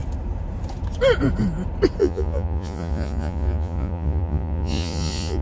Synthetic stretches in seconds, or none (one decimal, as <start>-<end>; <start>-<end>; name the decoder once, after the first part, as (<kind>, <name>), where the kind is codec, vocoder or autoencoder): 2.0-5.4 (vocoder, Vocos)